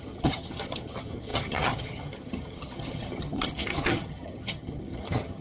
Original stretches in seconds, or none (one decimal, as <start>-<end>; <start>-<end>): none